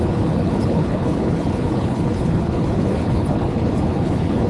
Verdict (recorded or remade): remade